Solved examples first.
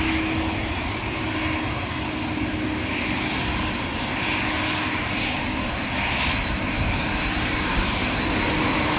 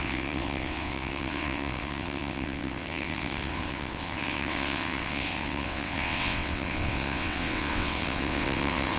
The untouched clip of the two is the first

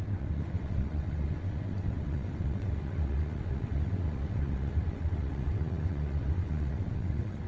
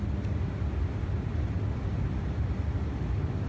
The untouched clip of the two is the second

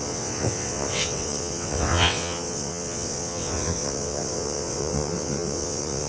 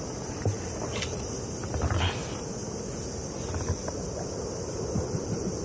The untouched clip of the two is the second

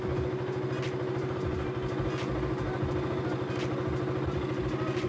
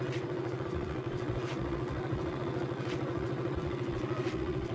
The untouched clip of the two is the first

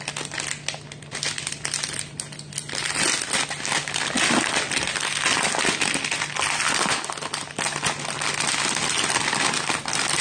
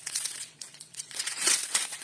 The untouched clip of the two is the first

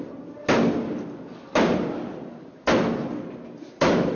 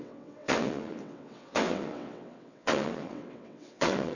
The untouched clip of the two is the first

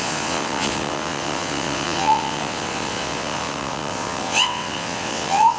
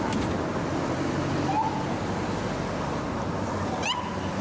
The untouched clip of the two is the second